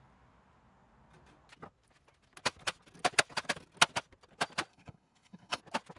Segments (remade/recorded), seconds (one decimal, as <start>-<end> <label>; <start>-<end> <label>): 0.0-4.7 recorded; 4.7-5.6 remade; 5.6-6.0 recorded